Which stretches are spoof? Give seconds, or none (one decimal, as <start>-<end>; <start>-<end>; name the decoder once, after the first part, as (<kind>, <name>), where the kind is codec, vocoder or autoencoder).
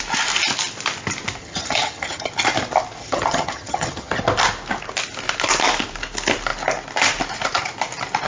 1.4-2.3 (vocoder, HiFi-GAN); 3.0-4.2